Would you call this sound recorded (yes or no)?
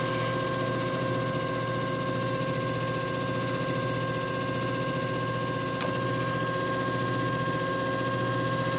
yes